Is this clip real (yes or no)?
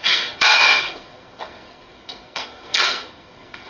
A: no